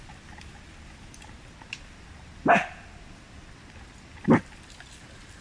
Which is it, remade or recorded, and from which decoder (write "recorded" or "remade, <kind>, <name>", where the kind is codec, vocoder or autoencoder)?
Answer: recorded